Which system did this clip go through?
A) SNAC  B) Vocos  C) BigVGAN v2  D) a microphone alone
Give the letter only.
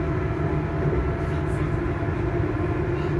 D